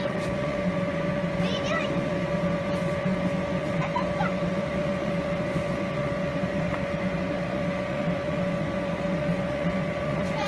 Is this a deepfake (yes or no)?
yes